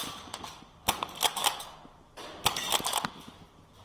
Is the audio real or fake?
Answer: real